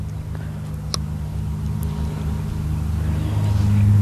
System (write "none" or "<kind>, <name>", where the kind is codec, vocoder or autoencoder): none